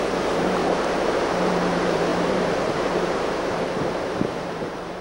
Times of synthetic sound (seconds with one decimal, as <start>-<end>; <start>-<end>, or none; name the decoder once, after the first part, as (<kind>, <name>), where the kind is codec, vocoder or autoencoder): 0.0-5.0 (vocoder, BigVGAN v2)